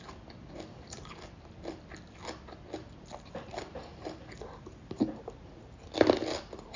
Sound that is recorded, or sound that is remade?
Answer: recorded